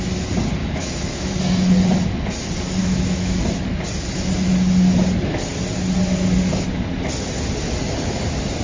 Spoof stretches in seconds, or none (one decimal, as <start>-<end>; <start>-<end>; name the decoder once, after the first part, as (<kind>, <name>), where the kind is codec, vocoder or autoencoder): 0.6-1.3 (autoencoder, DAC-VAE); 2.8-3.4